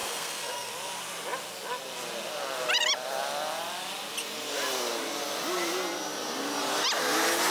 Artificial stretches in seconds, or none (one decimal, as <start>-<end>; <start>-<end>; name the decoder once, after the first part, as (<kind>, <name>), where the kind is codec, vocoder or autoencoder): 0.0-0.7 (codec, SNAC)